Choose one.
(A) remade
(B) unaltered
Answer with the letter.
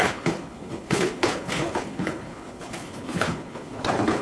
A